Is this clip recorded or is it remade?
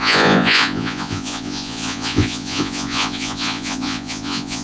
remade